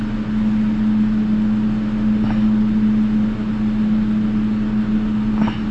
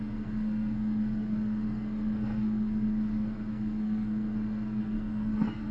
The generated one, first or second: second